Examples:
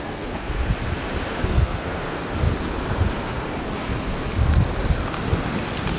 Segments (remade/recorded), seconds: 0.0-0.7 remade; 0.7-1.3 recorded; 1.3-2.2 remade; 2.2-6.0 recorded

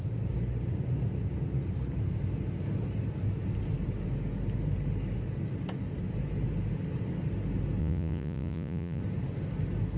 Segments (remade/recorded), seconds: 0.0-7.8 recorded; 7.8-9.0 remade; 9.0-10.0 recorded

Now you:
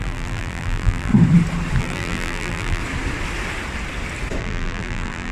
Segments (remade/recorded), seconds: 0.0-1.1 remade; 1.1-1.8 recorded; 1.8-2.8 remade; 2.8-4.4 recorded; 4.4-5.3 remade

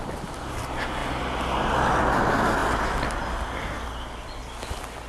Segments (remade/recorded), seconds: 0.0-5.1 recorded

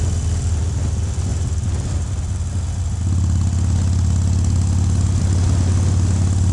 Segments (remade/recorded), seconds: 0.0-6.5 recorded